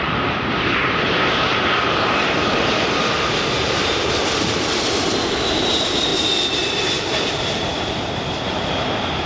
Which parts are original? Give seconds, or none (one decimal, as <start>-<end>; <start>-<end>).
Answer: 1.5-3.0; 6.1-6.7